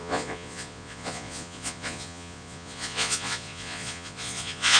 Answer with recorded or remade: remade